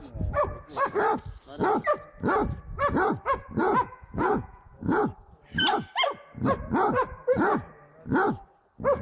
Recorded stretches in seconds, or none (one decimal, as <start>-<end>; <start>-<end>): 0.0-3.6; 5.0-9.0